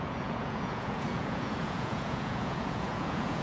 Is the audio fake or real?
fake